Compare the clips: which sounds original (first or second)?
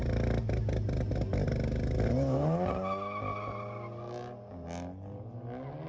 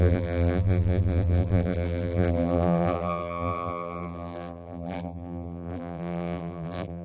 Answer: first